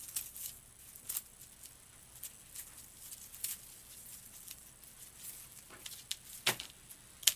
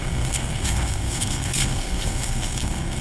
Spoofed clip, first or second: second